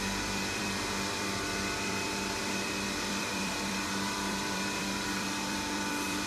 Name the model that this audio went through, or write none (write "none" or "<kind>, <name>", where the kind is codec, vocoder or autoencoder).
vocoder, BigVGAN v2